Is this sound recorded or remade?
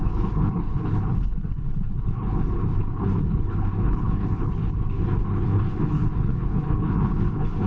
remade